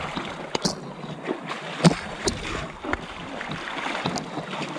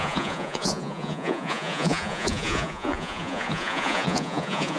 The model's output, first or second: second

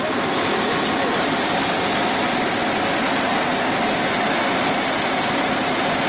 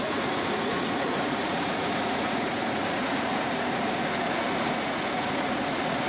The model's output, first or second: second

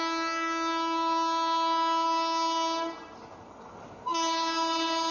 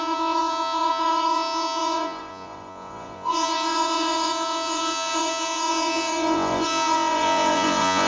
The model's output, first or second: second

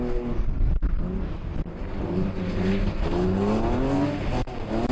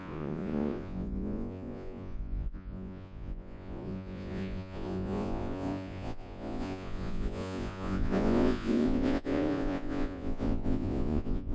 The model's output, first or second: second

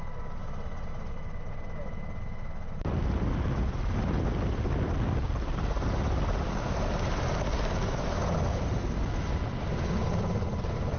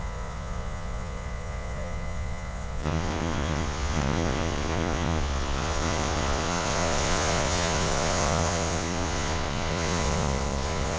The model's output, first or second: second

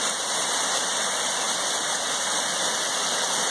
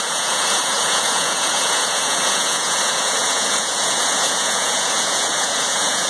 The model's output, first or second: second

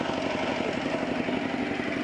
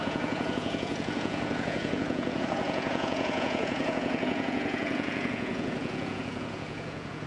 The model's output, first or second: second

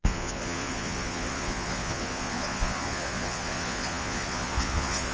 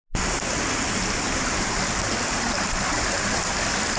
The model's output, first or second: first